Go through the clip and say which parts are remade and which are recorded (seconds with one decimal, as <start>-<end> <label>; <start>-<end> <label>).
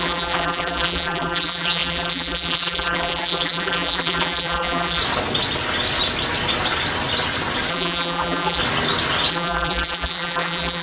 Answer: 0.0-5.0 remade; 5.0-7.7 recorded; 7.7-8.6 remade; 8.6-9.3 recorded; 9.3-10.8 remade